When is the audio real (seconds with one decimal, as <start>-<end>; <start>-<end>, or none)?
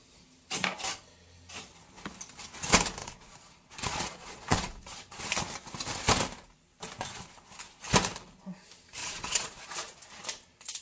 0.0-3.0; 5.2-9.0; 10.0-10.8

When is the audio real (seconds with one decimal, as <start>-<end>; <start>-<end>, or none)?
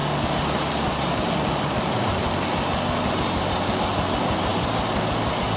2.2-3.7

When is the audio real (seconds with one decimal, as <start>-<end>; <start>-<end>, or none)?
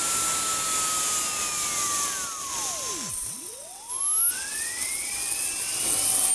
0.0-3.1; 3.9-4.3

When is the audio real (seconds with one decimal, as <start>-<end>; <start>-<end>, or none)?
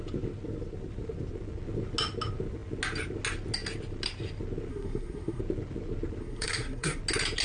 0.0-4.7; 5.4-6.2; 7.0-7.4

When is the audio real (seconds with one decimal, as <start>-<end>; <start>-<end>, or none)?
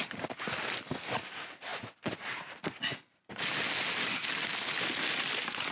0.0-5.7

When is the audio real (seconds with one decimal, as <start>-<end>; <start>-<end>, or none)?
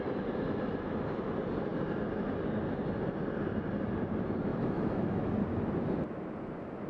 0.0-4.5; 5.3-6.9